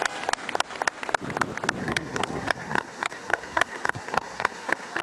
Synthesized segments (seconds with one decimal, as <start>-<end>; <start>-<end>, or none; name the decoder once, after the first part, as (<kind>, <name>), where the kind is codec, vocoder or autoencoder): 1.8-5.0 (codec, SNAC)